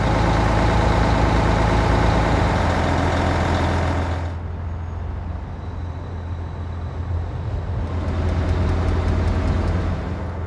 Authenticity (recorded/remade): recorded